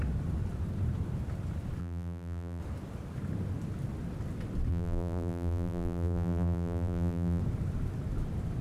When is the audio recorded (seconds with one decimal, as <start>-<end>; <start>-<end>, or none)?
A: 0.0-1.8; 2.6-4.7; 7.4-8.6